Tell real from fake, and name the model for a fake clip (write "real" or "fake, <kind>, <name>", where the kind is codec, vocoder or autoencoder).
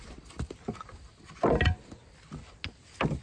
real